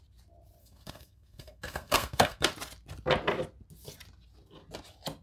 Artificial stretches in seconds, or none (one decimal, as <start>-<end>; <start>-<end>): 0.6-2.5